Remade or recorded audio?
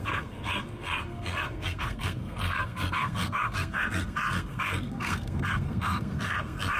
remade